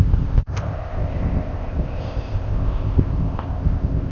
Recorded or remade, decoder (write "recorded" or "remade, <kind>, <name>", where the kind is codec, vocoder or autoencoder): remade, codec, ZipCodec